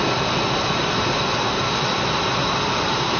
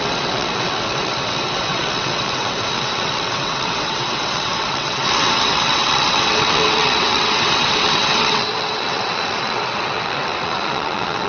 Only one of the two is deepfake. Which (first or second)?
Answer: second